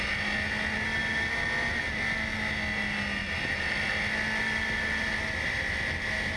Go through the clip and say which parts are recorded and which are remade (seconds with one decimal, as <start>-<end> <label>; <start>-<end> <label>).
0.0-6.4 recorded